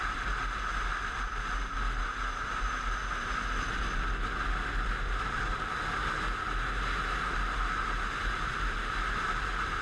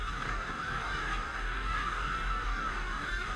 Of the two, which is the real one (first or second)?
first